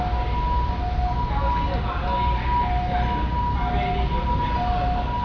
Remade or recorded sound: recorded